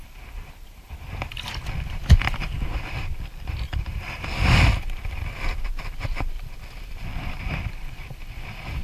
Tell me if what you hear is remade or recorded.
remade